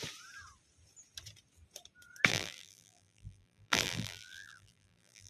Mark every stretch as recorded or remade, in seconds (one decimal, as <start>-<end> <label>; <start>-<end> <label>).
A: 0.0-2.3 recorded; 2.3-5.3 remade